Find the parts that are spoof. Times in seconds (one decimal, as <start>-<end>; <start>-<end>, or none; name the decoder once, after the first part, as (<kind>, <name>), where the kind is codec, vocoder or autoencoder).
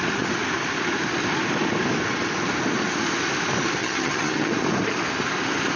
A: 3.8-4.5 (vocoder, HiFi-GAN)